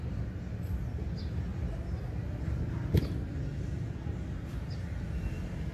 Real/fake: real